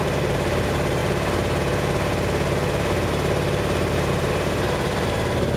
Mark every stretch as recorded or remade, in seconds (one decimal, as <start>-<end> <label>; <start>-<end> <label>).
0.0-1.0 remade; 1.0-4.1 recorded; 4.1-5.6 remade